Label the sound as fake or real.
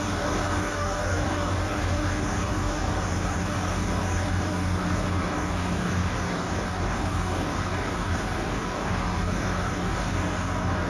fake